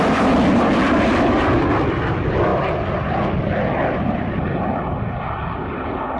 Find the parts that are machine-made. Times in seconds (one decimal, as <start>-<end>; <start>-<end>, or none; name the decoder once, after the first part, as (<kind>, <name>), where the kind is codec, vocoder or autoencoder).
0.0-2.5 (vocoder, BigVGAN v2); 3.3-6.2